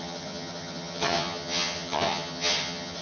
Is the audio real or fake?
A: fake